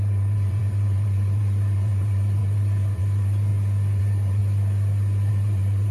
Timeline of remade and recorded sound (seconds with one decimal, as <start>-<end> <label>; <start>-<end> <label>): 0.0-3.5 remade; 3.5-4.0 recorded; 4.0-4.4 remade; 4.4-5.3 recorded; 5.3-5.9 remade